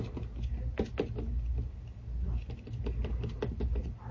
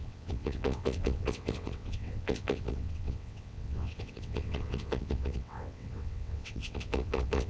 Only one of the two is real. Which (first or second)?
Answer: first